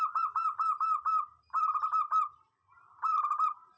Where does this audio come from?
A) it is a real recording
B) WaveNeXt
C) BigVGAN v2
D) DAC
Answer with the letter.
A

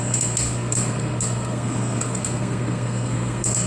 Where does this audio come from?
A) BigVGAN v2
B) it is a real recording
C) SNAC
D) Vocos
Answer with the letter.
C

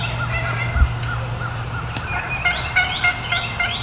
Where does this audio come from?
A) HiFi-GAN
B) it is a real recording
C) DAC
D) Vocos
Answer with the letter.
B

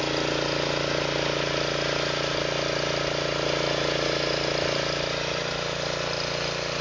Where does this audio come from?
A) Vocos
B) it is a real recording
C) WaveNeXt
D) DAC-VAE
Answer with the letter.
B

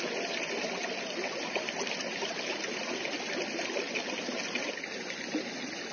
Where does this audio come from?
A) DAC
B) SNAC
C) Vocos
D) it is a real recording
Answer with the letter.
D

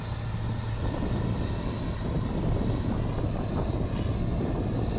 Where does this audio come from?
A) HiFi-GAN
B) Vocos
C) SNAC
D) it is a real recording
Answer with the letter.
D